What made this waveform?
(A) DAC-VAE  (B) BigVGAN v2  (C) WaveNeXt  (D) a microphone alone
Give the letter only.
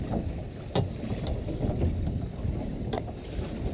D